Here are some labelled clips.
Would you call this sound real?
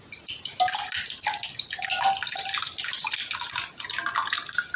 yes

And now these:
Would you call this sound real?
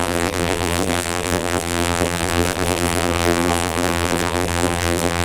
no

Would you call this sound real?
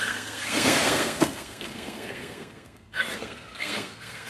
no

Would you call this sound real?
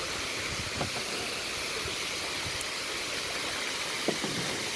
yes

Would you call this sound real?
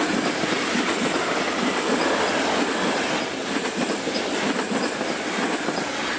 yes